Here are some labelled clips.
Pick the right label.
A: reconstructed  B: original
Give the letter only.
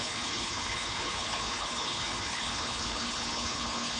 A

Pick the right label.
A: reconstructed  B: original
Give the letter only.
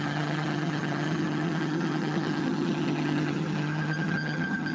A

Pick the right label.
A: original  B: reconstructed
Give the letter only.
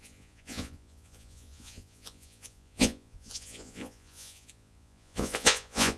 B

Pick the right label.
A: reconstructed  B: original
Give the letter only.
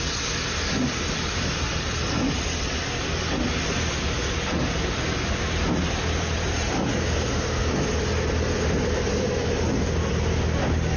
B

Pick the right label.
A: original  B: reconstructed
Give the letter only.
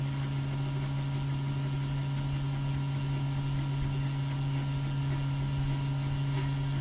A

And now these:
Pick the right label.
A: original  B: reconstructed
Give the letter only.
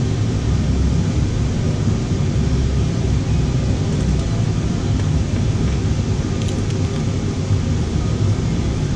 A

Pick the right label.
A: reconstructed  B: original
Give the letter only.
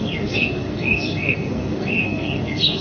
A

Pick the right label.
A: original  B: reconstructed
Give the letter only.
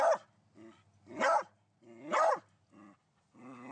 A